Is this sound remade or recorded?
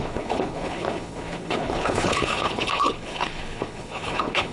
remade